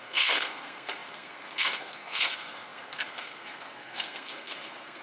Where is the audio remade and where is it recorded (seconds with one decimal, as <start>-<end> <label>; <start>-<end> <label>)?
0.0-5.0 remade